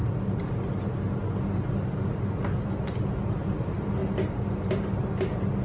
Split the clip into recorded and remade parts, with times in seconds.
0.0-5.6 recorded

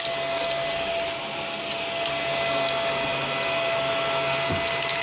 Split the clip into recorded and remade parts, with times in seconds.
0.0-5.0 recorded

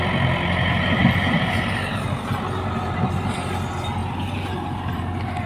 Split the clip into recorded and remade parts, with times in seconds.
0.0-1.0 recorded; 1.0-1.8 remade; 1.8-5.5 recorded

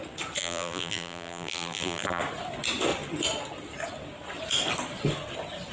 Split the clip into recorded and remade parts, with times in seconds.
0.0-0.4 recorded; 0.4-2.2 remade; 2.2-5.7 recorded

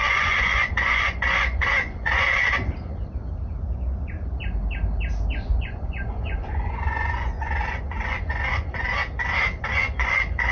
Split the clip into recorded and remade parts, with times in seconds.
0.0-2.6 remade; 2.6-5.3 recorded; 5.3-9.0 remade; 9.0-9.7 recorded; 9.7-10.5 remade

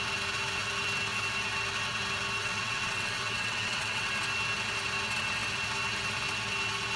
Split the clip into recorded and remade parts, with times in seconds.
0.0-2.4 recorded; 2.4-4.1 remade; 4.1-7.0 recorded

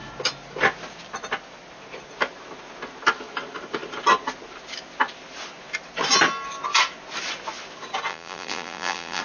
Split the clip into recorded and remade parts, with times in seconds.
0.0-8.1 recorded; 8.1-9.2 remade